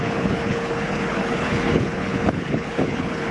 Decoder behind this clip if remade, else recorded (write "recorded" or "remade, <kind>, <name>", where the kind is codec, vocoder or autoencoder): remade, codec, HILCodec